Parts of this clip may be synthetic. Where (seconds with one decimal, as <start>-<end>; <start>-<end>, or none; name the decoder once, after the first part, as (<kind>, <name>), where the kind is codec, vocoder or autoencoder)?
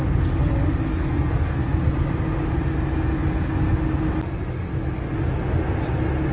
0.9-1.8 (codec, SNAC)